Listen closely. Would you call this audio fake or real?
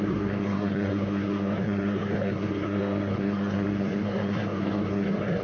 fake